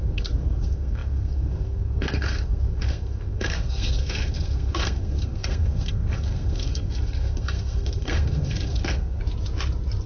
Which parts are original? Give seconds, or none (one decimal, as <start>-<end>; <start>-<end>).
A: 9.2-10.1